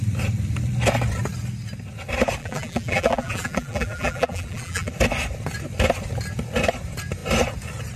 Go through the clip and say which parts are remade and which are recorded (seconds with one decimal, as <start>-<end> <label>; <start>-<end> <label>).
0.0-2.4 recorded; 2.4-4.9 remade; 4.9-8.0 recorded